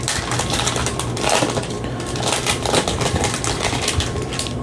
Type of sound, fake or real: fake